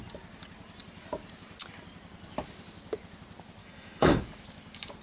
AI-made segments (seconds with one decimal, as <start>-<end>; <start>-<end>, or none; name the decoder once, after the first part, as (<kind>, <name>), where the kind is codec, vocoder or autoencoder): 3.6-4.2 (autoencoder, DAC-VAE)